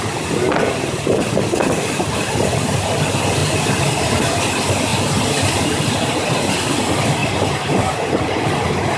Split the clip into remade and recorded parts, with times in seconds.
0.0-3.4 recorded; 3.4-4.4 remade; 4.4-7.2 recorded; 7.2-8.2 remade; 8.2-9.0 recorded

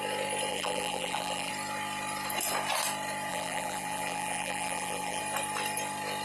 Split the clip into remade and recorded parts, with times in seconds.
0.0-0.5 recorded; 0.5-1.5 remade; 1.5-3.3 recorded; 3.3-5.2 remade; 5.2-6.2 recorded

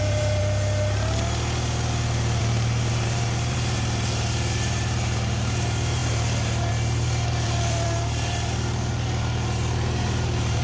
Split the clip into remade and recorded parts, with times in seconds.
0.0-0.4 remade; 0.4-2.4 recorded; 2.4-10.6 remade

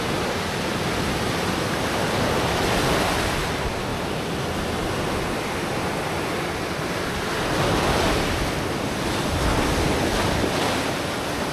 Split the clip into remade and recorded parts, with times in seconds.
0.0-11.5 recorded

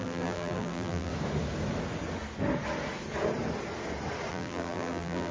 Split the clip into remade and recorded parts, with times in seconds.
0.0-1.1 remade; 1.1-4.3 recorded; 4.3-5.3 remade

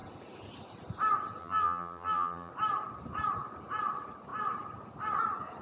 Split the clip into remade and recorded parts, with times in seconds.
0.0-1.4 recorded; 1.4-2.5 remade; 2.5-5.6 recorded